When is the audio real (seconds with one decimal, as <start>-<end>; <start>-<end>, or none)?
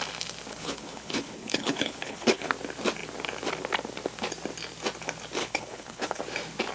0.0-0.5; 2.5-5.4; 6.2-6.7